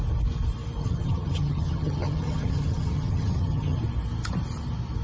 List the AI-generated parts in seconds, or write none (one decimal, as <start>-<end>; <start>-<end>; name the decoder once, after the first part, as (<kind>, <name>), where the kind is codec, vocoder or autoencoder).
0.8-3.8 (vocoder, HiFi-GAN)